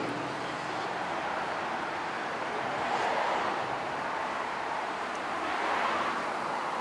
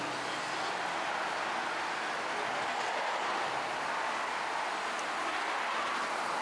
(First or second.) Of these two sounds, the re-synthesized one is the first